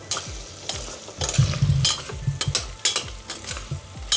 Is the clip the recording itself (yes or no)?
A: yes